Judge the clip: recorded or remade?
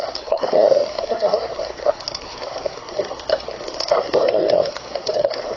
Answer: remade